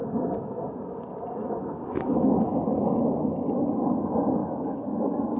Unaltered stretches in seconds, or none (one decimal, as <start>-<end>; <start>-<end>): 0.6-1.4; 2.6-4.4; 5.0-5.4